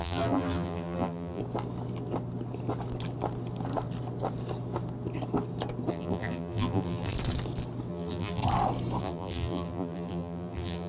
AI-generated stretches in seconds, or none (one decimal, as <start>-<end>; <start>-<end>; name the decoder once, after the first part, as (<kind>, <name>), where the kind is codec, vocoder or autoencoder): 0.0-1.4 (vocoder, BigVGAN v2); 5.9-7.1; 7.9-8.4; 9.0-10.9

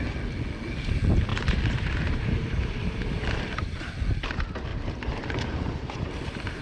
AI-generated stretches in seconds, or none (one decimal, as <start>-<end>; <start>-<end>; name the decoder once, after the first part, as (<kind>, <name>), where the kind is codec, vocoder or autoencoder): 1.3-3.9 (vocoder, BigVGAN v2); 4.7-6.6